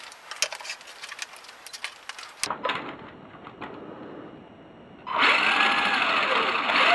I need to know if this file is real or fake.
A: real